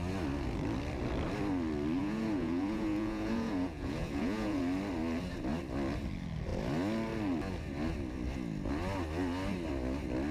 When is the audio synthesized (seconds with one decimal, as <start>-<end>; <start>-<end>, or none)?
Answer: 2.0-4.6